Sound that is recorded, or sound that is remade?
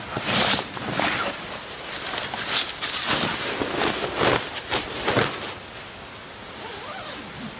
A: recorded